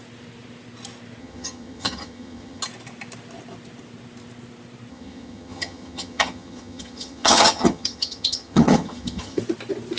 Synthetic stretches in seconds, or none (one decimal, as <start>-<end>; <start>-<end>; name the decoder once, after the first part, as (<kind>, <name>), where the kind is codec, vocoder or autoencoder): 1.2-2.6 (vocoder, HiFi-GAN); 4.9-9.4